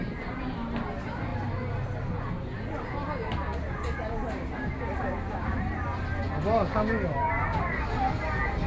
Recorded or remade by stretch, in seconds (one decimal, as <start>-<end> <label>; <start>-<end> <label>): 0.0-8.7 recorded